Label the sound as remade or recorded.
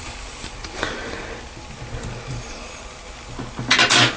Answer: recorded